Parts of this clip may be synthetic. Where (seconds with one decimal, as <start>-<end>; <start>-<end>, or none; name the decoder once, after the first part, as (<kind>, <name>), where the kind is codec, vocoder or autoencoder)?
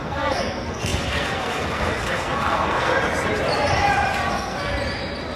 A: 0.0-2.9 (codec, SNAC); 4.3-4.7